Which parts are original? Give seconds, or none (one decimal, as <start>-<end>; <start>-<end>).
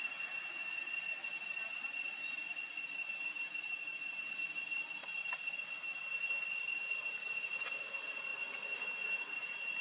0.0-9.8